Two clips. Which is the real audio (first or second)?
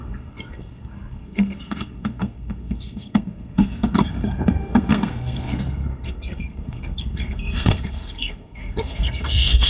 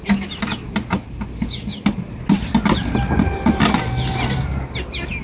second